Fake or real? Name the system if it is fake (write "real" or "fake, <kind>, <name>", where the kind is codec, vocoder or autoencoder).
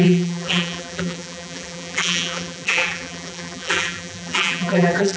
fake, vocoder, BigVGAN v2